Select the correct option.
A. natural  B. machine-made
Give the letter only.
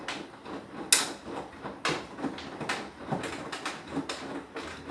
A